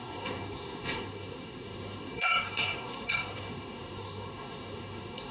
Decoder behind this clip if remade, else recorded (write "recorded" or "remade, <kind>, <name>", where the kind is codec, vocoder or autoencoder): remade, codec, SNAC